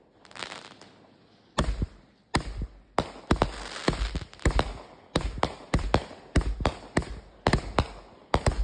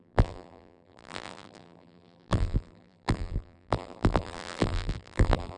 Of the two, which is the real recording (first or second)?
first